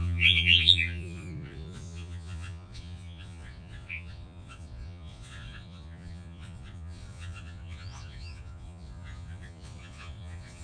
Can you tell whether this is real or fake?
fake